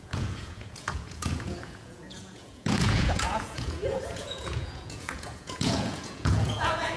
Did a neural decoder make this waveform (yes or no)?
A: yes